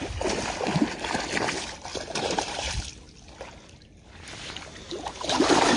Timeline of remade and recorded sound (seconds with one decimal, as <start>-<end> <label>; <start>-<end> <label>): 0.0-1.9 recorded; 1.9-2.8 remade; 2.8-4.4 recorded; 4.4-5.8 remade